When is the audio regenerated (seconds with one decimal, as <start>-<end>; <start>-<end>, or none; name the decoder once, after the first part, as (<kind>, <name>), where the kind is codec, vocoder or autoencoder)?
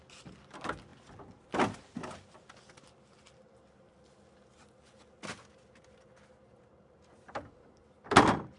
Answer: none